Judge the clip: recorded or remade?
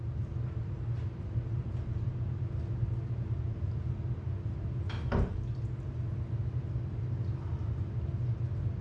recorded